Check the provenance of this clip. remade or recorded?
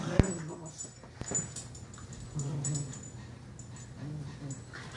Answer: recorded